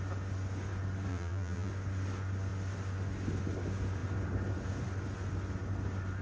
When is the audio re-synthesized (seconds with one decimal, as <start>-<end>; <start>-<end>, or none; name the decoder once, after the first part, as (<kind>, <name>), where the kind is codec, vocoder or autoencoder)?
1.1-1.7 (vocoder, BigVGAN v2)